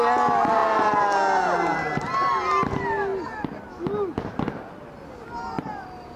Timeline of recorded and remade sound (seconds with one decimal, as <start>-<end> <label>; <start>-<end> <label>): 0.0-6.2 recorded